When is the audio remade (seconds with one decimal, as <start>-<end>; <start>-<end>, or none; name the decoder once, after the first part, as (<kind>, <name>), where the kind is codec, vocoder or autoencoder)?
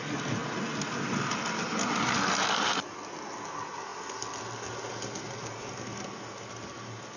none